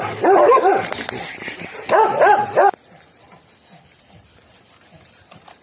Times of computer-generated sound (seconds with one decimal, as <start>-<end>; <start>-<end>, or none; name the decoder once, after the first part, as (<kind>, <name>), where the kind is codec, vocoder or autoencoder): 0.0-5.6 (vocoder, BigVGAN v2)